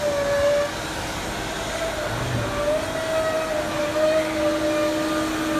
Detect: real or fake real